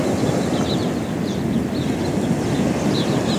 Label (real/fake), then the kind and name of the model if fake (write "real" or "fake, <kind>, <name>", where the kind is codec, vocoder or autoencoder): real